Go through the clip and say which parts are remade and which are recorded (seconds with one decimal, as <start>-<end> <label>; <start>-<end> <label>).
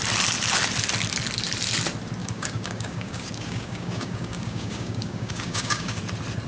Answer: 0.0-2.2 recorded; 2.2-6.0 remade; 6.0-6.5 recorded